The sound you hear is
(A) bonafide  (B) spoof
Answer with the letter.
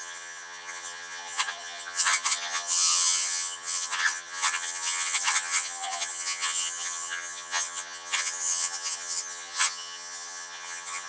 B